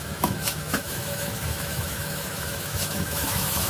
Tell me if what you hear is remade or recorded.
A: remade